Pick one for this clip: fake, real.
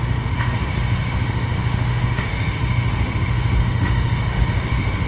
fake